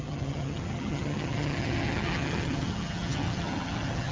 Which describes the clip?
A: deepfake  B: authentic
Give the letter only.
A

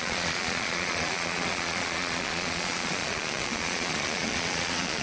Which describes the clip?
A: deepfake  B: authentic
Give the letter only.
A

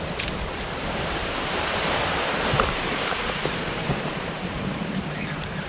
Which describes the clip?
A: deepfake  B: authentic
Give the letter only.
A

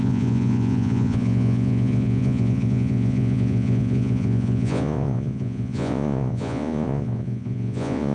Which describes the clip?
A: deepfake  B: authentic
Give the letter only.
A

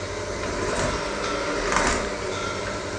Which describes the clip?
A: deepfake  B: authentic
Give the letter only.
B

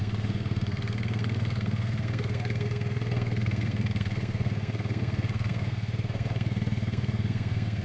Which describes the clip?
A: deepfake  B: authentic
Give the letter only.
A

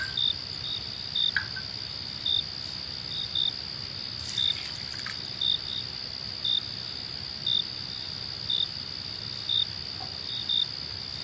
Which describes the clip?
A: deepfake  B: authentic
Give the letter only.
B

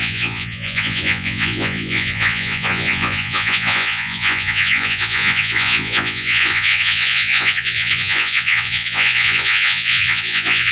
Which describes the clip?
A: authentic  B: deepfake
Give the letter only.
B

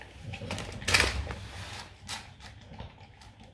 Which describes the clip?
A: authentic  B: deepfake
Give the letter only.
A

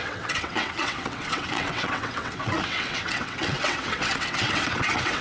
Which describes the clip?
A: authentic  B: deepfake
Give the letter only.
B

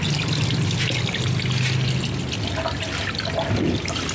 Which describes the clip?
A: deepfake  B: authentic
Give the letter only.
B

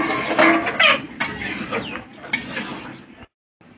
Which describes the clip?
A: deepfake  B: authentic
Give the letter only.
B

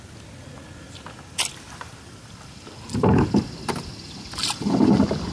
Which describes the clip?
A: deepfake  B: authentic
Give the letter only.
B